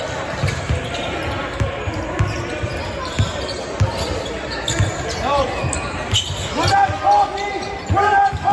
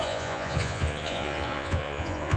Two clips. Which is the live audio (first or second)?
first